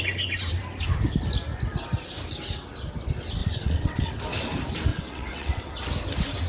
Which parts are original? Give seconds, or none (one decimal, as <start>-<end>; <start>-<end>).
0.0-3.4; 4.1-4.9; 5.8-6.5